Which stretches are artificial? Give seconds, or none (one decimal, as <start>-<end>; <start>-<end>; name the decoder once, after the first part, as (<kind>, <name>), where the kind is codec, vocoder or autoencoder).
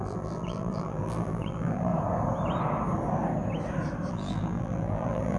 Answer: 0.0-1.9 (vocoder, BigVGAN v2); 4.1-5.4